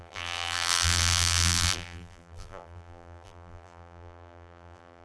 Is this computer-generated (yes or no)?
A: yes